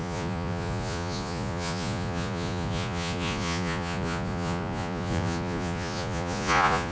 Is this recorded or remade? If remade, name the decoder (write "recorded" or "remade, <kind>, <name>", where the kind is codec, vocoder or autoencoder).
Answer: remade, vocoder, Vocos